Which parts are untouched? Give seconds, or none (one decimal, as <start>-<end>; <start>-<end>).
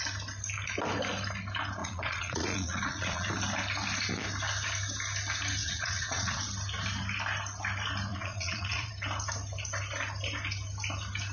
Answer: 0.0-1.8; 3.3-5.6; 6.4-8.1; 8.9-11.3